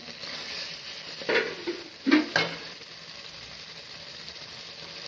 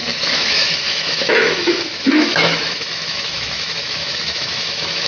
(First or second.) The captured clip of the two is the first